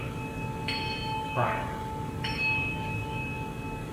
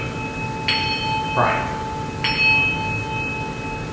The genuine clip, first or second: second